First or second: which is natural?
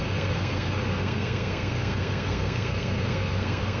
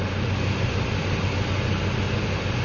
second